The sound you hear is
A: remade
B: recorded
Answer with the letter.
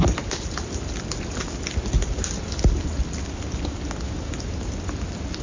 B